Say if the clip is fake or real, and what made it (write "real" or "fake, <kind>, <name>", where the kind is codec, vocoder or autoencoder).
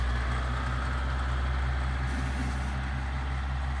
real